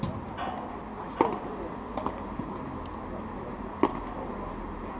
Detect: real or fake real